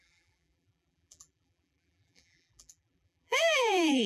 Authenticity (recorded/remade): remade